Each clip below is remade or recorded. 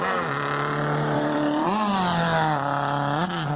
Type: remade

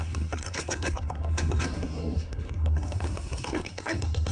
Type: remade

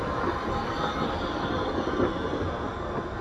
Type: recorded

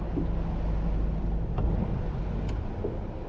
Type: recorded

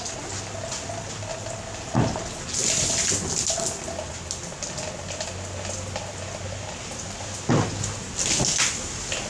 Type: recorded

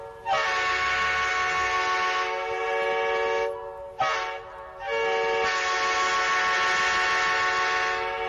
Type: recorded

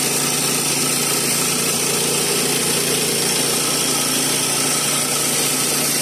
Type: recorded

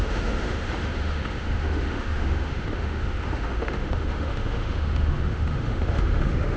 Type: remade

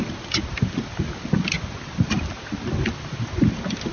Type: recorded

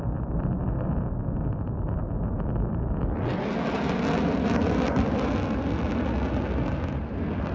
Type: recorded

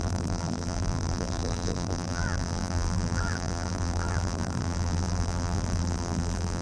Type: remade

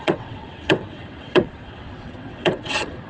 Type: remade